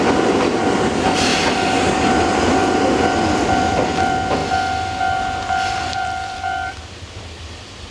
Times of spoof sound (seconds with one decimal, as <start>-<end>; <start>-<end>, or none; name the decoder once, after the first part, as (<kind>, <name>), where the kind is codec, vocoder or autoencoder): 0.0-1.3 (vocoder, BigVGAN v2); 3.2-4.4; 5.7-7.9